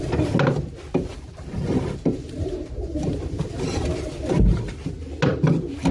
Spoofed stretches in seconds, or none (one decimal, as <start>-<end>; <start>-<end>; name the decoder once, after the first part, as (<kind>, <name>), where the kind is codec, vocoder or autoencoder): 1.1-4.1 (vocoder, BigVGAN v2)